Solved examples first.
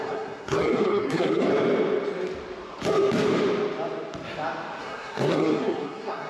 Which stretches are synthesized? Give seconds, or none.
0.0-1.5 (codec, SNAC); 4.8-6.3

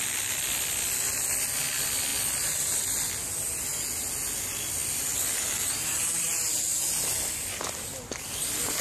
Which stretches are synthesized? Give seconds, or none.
none

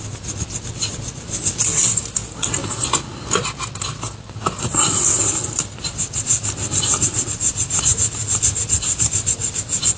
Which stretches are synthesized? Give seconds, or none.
none